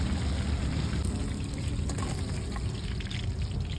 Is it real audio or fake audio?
real